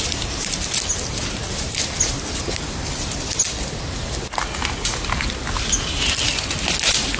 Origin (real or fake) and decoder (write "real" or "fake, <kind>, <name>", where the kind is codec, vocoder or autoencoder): real